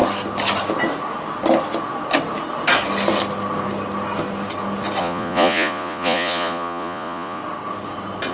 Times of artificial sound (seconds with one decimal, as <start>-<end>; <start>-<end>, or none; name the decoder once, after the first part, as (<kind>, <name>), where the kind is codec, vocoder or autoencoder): 5.0-7.4 (vocoder, Vocos)